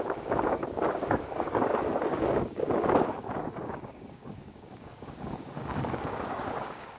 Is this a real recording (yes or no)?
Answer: no